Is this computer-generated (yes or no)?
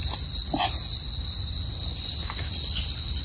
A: no